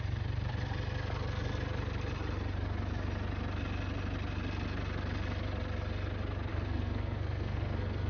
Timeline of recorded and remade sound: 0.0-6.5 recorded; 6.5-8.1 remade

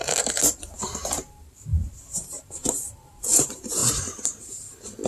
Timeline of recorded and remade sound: 0.0-3.8 remade; 3.8-4.4 recorded; 4.4-5.1 remade

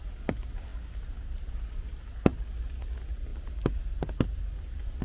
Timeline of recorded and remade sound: 0.0-5.0 recorded

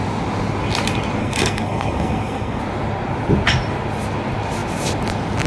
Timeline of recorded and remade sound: 0.0-1.2 recorded; 1.2-2.6 remade; 2.6-5.5 recorded

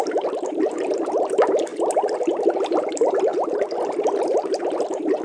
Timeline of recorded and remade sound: 0.0-1.7 remade; 1.7-2.8 recorded; 2.8-5.2 remade